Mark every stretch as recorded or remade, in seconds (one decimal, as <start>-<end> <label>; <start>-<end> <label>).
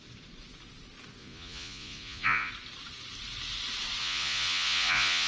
0.0-1.2 recorded; 1.2-2.5 remade; 2.5-4.0 recorded; 4.0-5.3 remade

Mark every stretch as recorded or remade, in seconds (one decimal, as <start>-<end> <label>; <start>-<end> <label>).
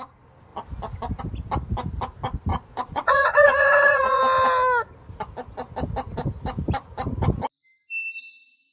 0.0-2.5 recorded; 2.5-4.2 remade; 4.2-8.7 recorded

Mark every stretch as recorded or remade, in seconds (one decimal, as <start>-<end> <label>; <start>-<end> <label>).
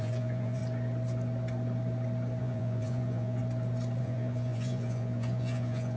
0.0-0.6 remade; 0.6-2.4 recorded; 2.4-3.4 remade; 3.4-4.0 recorded; 4.0-6.0 remade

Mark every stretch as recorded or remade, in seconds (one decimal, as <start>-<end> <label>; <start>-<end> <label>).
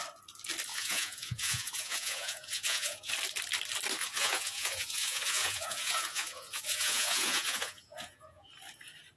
0.0-0.7 recorded; 0.7-3.1 remade; 3.1-4.0 recorded; 4.0-8.5 remade; 8.5-9.2 recorded